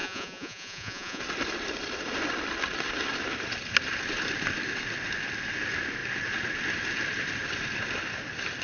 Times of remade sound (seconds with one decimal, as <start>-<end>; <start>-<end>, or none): 0.0-1.2